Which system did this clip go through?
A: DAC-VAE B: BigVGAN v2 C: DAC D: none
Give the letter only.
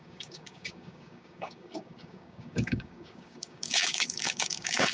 C